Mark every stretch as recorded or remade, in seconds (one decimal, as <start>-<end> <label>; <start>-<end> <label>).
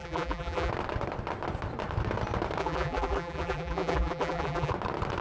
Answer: 0.0-0.7 remade; 0.7-2.6 recorded; 2.6-4.7 remade; 4.7-5.2 recorded